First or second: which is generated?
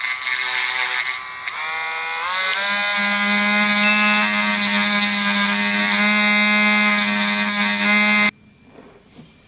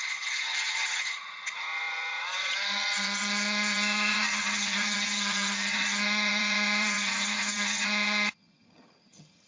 second